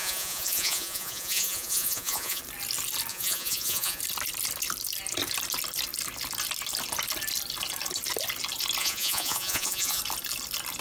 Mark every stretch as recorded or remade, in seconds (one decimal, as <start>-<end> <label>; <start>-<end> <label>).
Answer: 0.0-2.4 remade; 2.4-3.1 recorded; 3.1-4.0 remade; 4.0-8.8 recorded; 8.8-10.0 remade; 10.0-10.8 recorded